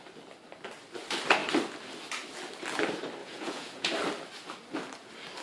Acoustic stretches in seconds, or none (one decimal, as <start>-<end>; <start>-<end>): 0.0-3.2; 3.9-5.4